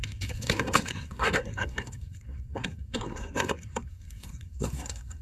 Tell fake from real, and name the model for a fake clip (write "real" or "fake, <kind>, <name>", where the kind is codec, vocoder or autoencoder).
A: fake, codec, SNAC